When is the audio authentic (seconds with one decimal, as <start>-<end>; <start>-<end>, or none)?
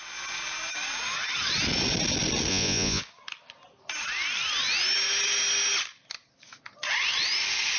0.0-2.5; 3.0-7.8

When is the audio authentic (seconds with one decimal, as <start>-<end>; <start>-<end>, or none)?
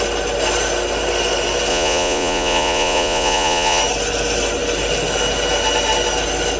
0.0-1.7; 3.8-6.6